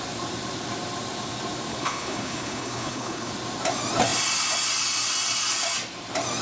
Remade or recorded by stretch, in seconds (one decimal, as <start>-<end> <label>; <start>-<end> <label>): 0.0-1.7 recorded; 1.7-3.3 remade; 3.3-6.4 recorded